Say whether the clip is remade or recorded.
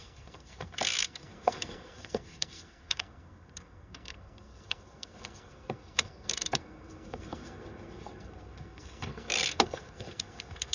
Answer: remade